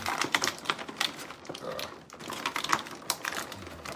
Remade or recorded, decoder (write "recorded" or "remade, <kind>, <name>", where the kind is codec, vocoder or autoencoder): recorded